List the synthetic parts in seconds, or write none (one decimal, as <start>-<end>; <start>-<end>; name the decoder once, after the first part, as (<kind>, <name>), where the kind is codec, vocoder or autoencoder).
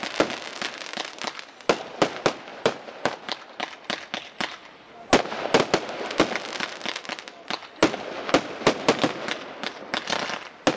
2.5-3.6 (vocoder, BigVGAN v2)